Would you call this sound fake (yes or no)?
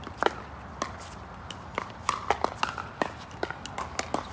no